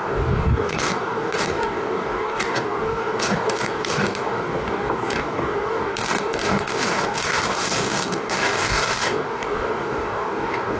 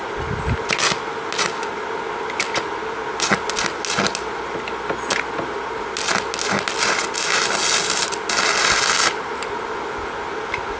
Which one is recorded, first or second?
second